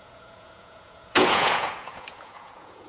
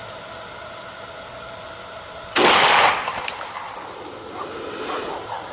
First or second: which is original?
second